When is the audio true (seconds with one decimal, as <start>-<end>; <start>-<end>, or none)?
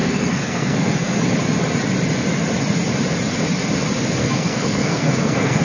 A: 1.2-4.2